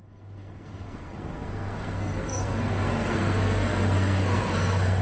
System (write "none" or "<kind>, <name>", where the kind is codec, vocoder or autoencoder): codec, SNAC